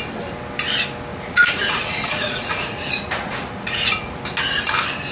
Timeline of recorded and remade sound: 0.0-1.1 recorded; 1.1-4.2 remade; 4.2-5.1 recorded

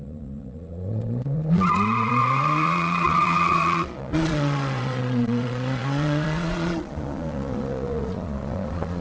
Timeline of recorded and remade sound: 0.0-9.0 remade

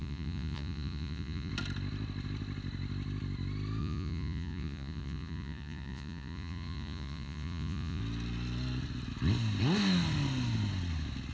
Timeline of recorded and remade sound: 0.0-1.5 remade; 1.5-3.8 recorded; 3.8-8.0 remade; 8.0-11.3 recorded

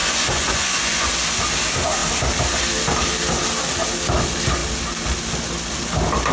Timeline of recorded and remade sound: 0.0-1.1 remade; 1.1-6.3 recorded

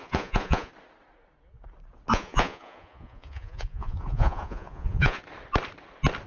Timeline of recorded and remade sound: 0.0-0.7 remade; 0.7-2.1 recorded; 2.1-5.2 remade; 5.2-6.3 recorded

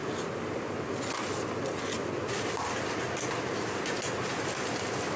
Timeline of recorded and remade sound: 0.0-5.2 recorded